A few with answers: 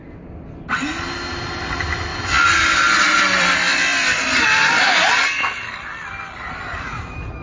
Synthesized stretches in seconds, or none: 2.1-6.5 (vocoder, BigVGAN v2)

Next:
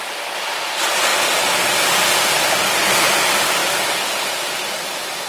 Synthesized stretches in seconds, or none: 0.0-1.1 (vocoder, BigVGAN v2); 2.9-5.3

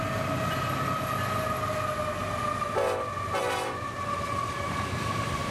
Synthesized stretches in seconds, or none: none